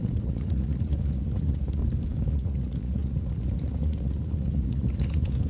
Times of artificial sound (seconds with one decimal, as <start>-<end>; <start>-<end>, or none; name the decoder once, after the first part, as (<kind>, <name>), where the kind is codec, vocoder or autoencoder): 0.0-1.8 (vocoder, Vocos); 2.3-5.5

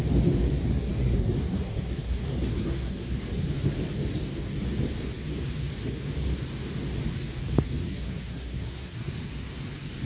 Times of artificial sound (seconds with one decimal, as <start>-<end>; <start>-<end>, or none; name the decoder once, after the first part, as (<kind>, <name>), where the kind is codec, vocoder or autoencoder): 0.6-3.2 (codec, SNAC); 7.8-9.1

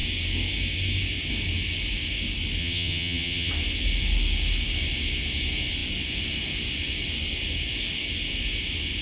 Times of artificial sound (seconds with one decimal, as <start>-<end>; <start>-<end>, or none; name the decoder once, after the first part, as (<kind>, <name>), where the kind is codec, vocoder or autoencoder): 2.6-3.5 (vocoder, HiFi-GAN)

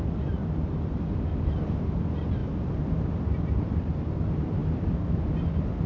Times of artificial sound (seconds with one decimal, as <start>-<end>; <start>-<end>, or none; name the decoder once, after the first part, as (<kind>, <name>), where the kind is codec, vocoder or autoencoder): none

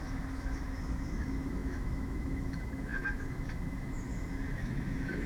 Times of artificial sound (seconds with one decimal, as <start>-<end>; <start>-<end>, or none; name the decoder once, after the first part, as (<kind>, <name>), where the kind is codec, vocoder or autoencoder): 0.0-5.3 (autoencoder, DAC-VAE)